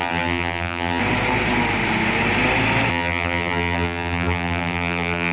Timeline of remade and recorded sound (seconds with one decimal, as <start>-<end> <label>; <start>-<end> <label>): 0.0-1.0 remade; 1.0-2.9 recorded; 2.9-5.3 remade